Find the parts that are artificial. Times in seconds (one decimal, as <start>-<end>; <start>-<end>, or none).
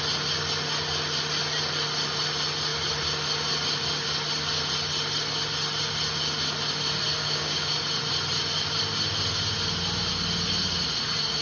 7.2-7.7